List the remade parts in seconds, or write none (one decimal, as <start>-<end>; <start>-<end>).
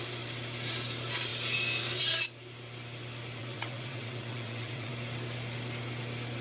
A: 3.4-4.9